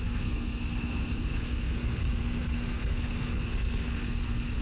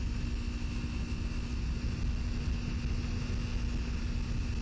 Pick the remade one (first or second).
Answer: first